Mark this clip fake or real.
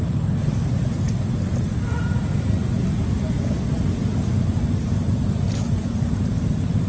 real